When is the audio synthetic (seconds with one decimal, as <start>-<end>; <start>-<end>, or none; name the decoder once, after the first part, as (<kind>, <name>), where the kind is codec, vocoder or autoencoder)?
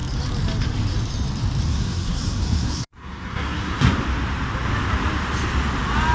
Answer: 1.7-3.9 (codec, SNAC)